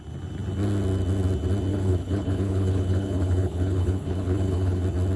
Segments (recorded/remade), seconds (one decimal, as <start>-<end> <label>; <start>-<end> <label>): 0.0-1.7 recorded; 1.7-4.8 remade; 4.8-5.2 recorded